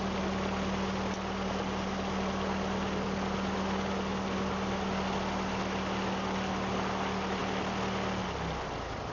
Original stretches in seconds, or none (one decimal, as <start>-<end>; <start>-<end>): 0.0-9.1